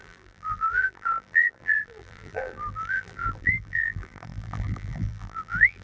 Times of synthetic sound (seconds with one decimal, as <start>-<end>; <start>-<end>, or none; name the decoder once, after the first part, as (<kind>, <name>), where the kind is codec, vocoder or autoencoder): 0.0-5.8 (vocoder, BigVGAN v2)